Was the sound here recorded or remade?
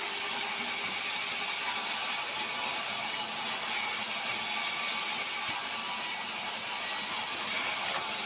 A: recorded